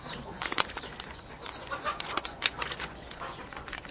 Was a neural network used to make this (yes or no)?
yes